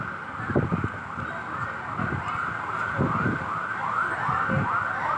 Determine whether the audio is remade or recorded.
recorded